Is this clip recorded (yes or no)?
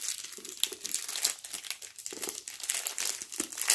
yes